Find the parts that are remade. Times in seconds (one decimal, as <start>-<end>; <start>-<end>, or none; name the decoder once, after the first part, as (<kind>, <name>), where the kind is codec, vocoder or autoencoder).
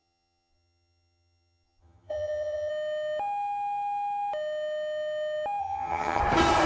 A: 0.0-2.7 (vocoder, HiFi-GAN); 5.6-6.2